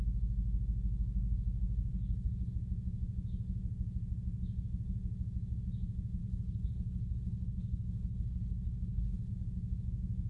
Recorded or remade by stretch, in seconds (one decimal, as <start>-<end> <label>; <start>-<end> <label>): 0.0-1.9 recorded; 1.9-2.5 remade; 2.5-6.2 recorded; 6.2-9.3 remade; 9.3-10.3 recorded

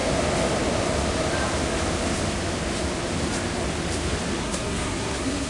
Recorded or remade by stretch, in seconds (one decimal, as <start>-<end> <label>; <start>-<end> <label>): 0.0-4.4 recorded; 4.4-5.5 remade

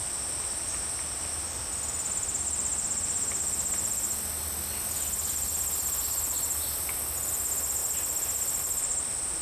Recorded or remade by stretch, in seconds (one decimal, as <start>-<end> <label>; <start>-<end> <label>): 0.0-9.4 recorded

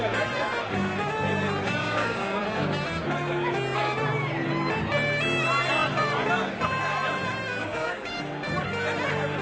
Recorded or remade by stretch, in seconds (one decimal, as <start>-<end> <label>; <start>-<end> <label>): 0.0-1.8 recorded; 1.8-2.4 remade; 2.4-7.6 recorded; 7.6-8.2 remade; 8.2-9.4 recorded

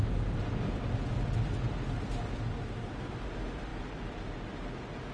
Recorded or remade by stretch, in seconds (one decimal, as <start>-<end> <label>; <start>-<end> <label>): 0.0-5.1 recorded